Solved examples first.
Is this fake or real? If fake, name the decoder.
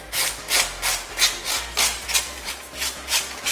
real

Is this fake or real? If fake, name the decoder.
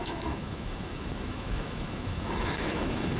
fake, autoencoder, DAC-VAE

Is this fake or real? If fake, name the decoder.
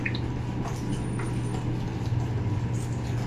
real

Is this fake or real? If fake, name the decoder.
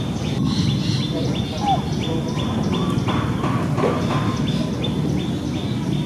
real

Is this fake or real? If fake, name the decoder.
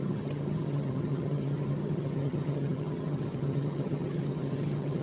fake, vocoder, HiFi-GAN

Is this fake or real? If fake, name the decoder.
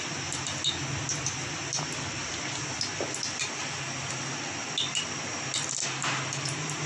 real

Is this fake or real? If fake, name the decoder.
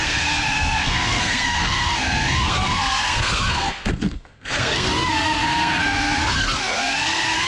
fake, codec, SNAC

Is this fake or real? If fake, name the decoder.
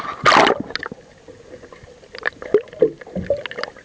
real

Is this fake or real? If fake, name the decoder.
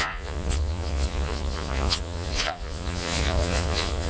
fake, vocoder, Vocos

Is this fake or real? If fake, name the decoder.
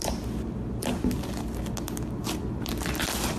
real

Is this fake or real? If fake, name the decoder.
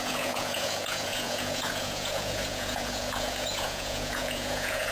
fake, vocoder, Vocos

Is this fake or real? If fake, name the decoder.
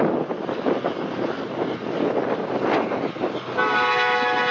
real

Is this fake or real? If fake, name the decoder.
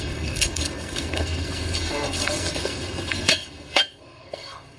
fake, codec, SNAC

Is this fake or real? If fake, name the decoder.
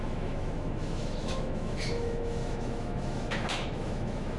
fake, autoencoder, DAC-VAE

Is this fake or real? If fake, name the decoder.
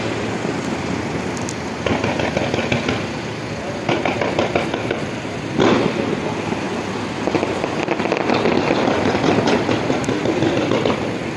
real